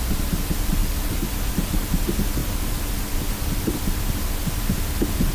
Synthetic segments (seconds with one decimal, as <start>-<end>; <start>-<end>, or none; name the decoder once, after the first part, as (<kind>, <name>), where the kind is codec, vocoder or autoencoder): 0.8-1.7 (vocoder, BigVGAN v2); 2.4-4.6